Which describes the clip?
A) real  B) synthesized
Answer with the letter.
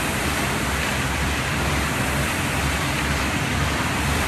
B